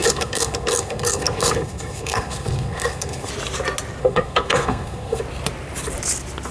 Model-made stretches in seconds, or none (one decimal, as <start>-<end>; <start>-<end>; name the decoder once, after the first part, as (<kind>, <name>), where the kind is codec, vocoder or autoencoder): 0.0-3.3 (codec, SNAC); 4.0-5.2